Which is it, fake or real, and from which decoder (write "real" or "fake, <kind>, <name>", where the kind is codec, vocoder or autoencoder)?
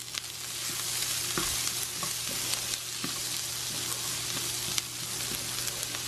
real